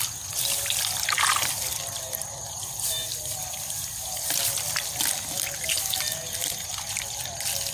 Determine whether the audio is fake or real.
real